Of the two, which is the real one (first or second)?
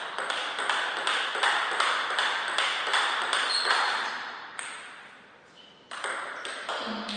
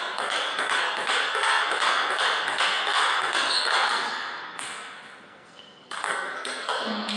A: first